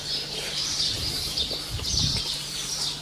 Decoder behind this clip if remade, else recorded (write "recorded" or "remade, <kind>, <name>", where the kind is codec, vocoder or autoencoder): remade, vocoder, BigVGAN v2